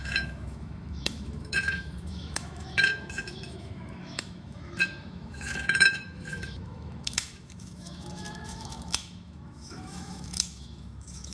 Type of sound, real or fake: fake